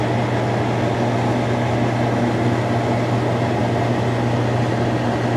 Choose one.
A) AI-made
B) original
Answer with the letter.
B